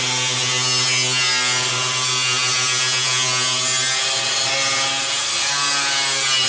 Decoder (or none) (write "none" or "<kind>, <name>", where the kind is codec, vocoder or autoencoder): none